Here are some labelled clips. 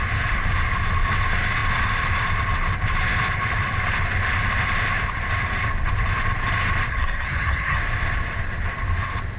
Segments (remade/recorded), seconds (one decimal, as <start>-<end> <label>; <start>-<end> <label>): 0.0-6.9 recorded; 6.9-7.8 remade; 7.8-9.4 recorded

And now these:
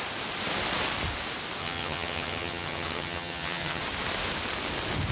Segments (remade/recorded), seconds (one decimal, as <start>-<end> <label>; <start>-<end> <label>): 0.0-1.6 recorded; 1.6-3.8 remade; 3.8-5.1 recorded

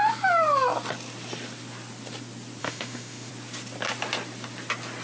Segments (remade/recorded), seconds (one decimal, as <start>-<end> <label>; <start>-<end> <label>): 0.0-2.6 recorded; 2.6-3.3 remade; 3.3-5.0 recorded